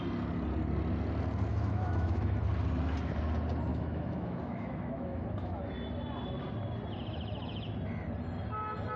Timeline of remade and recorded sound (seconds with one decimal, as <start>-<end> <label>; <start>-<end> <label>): 0.0-1.5 recorded; 1.5-2.4 remade; 2.4-3.7 recorded; 3.7-5.7 remade; 5.7-9.0 recorded